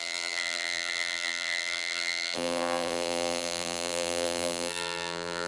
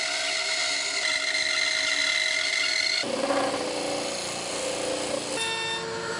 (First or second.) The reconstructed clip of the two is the first